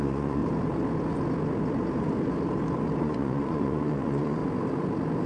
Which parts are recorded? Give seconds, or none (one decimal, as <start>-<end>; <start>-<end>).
0.4-3.0; 4.4-5.3